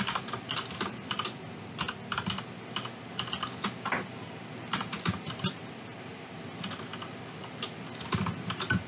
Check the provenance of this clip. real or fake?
real